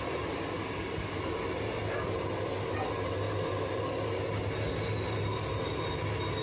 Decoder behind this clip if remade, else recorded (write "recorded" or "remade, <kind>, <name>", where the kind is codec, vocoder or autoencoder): recorded